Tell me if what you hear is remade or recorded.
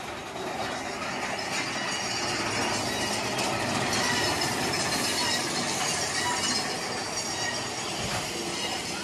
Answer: recorded